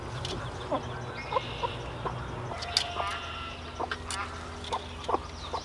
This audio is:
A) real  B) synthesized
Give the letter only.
A